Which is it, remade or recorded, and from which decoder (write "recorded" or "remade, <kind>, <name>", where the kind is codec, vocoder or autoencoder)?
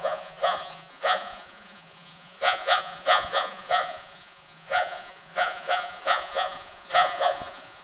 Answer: remade, vocoder, Vocos